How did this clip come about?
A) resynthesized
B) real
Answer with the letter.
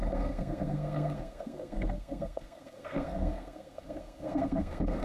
A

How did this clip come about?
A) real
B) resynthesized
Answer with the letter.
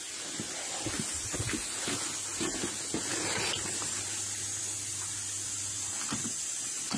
A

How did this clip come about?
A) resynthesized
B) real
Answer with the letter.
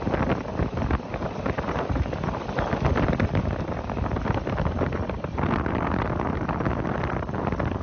B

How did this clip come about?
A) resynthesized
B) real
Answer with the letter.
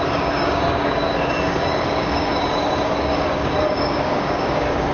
A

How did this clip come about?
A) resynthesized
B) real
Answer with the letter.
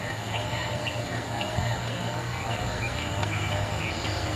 A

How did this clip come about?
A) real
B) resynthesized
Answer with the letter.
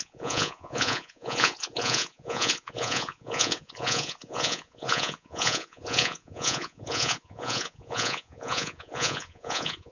B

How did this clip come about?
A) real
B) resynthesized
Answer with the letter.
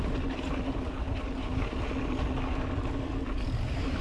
A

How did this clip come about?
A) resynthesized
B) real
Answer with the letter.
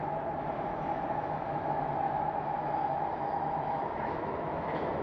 A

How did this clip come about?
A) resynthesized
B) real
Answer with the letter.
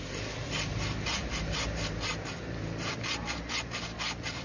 A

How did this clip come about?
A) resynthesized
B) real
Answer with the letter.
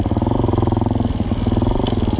B